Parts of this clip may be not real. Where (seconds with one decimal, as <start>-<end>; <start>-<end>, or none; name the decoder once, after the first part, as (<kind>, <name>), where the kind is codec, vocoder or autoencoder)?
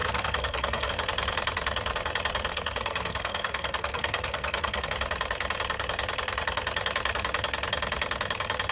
0.0-0.9 (codec, SNAC); 2.5-4.9